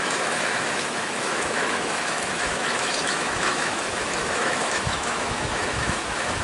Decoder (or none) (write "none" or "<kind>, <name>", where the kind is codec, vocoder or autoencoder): autoencoder, DAC-VAE